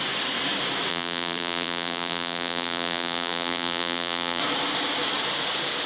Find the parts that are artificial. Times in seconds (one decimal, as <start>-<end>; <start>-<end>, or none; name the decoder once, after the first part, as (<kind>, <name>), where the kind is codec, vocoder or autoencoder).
0.9-4.4 (vocoder, BigVGAN v2)